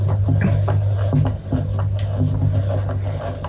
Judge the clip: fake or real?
real